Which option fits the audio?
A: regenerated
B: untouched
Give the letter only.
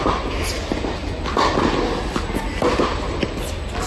B